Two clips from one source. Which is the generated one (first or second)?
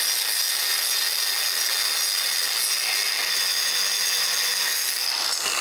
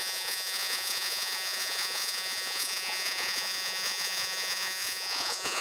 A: second